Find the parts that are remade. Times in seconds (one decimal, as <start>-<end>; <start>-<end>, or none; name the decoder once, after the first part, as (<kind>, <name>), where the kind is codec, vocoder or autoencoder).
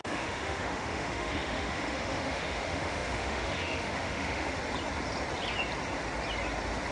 0.0-4.6 (autoencoder, DAC-VAE)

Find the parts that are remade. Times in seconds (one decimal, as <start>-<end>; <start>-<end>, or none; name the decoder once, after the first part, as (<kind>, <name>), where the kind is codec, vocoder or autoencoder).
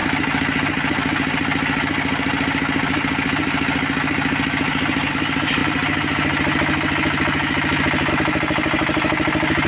none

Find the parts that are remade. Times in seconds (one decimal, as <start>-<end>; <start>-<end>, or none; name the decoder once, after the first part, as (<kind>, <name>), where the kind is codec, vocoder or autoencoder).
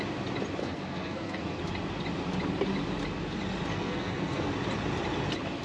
0.6-1.6 (codec, SNAC); 3.7-4.5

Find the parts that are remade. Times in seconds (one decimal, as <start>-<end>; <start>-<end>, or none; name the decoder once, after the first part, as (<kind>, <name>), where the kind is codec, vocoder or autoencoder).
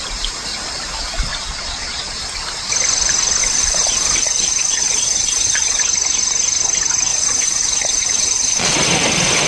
1.3-2.2 (vocoder, Vocos); 3.4-5.8; 7.1-8.7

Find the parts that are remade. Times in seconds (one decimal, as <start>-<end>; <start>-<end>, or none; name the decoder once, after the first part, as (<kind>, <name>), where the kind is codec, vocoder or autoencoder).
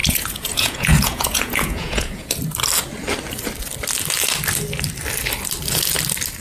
0.0-2.3 (vocoder, Vocos)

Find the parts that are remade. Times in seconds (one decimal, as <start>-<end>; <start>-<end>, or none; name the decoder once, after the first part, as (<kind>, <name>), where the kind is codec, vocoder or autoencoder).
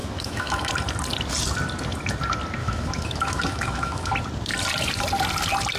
0.0-0.7 (autoencoder, DAC-VAE); 2.6-4.1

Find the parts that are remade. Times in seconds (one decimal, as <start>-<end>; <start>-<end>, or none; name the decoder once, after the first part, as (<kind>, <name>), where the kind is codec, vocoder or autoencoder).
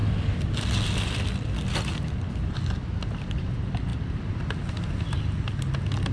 none